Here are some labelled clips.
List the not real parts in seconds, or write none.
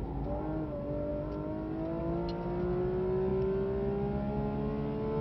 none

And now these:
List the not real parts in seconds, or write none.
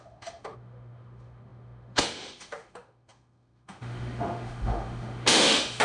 0.0-5.8